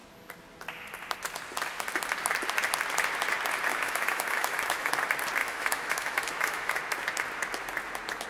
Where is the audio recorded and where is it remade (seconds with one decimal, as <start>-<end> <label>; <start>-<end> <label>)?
0.0-3.7 recorded; 3.7-4.9 remade; 4.9-5.4 recorded; 5.4-6.8 remade; 6.8-8.3 recorded